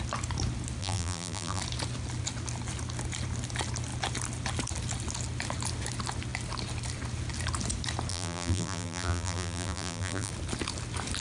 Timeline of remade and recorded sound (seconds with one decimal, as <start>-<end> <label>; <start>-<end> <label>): 0.0-0.8 recorded; 0.8-1.6 remade; 1.6-8.1 recorded; 8.1-10.3 remade; 10.3-11.2 recorded